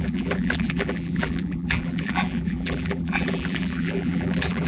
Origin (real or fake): fake